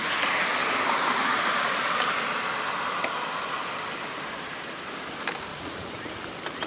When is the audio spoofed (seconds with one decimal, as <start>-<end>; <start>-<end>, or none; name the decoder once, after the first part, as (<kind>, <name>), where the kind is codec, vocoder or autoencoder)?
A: 5.5-6.1 (vocoder, Vocos)